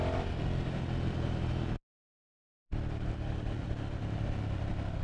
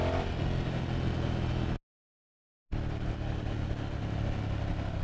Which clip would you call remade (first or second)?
first